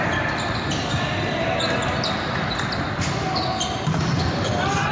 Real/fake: real